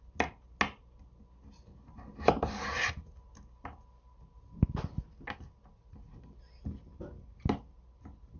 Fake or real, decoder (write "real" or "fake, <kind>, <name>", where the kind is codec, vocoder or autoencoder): real